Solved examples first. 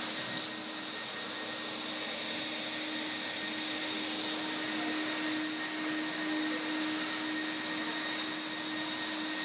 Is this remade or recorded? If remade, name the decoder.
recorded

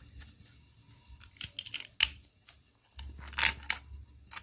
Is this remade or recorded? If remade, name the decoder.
recorded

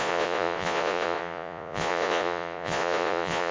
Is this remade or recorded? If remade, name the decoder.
remade, vocoder, Vocos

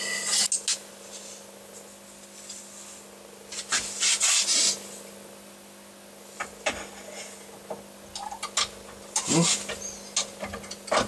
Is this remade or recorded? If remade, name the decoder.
recorded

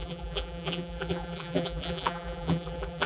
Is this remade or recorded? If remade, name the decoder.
remade, vocoder, BigVGAN v2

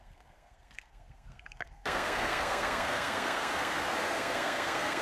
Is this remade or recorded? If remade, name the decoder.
remade, codec, SNAC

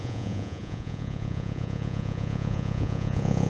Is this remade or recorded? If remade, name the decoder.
remade, vocoder, Vocos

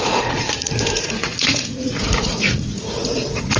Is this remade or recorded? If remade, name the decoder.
remade, vocoder, Vocos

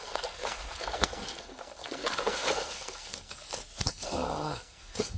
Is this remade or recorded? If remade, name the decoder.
remade, codec, SNAC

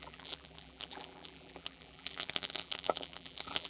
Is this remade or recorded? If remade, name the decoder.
remade, vocoder, BigVGAN v2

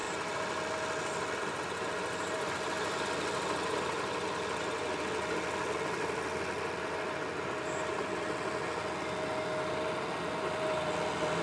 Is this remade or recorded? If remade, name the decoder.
recorded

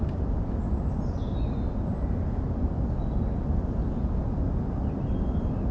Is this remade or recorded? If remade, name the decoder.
recorded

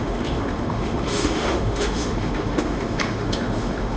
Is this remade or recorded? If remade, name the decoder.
remade, autoencoder, DAC-VAE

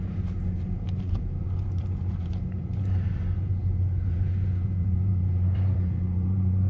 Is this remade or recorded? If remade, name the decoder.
remade, vocoder, BigVGAN v2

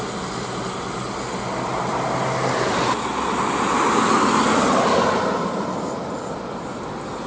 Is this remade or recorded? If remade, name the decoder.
recorded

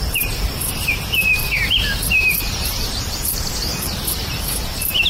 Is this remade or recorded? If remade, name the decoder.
remade, vocoder, BigVGAN v2